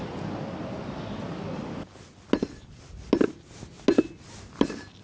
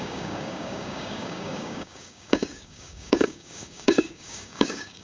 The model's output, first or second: second